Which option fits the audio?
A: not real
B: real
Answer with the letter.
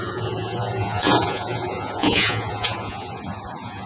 A